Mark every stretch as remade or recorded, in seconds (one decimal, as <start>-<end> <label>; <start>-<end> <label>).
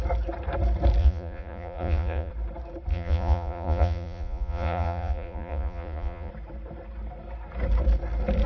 0.0-1.0 recorded; 1.0-2.3 remade; 2.3-2.9 recorded; 2.9-6.3 remade; 6.3-8.5 recorded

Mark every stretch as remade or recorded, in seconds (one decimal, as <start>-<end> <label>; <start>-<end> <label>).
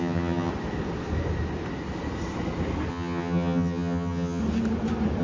0.0-0.5 remade; 0.5-2.9 recorded; 2.9-4.4 remade; 4.4-5.2 recorded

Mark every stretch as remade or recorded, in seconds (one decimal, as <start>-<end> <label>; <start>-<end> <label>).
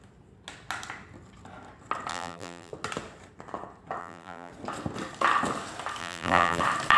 0.0-2.1 recorded; 2.1-2.7 remade; 2.7-4.0 recorded; 4.0-4.5 remade; 4.5-6.0 recorded; 6.0-6.6 remade; 6.6-7.0 recorded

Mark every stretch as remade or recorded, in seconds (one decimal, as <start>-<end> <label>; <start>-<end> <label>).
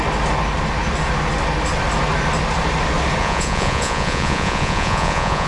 0.0-3.2 recorded; 3.2-5.5 remade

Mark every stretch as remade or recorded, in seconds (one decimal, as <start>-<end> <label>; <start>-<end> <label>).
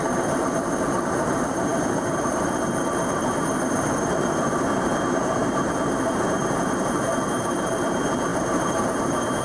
0.0-9.4 remade